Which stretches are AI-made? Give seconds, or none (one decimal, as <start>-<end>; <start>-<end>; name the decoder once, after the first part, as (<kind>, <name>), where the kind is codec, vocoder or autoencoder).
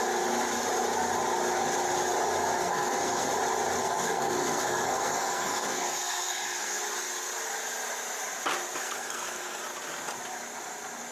2.6-3.3 (codec, SNAC); 3.8-6.8; 8.8-9.6